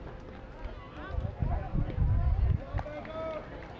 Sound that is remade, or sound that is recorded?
recorded